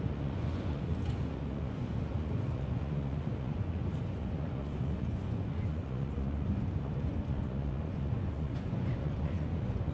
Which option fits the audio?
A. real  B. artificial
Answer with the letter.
B